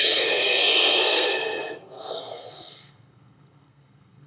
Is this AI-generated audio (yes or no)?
yes